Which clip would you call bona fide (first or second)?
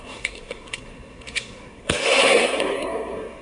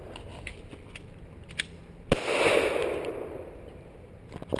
second